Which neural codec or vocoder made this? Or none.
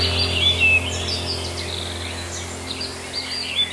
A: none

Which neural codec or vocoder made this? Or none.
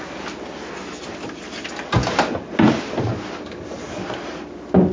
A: none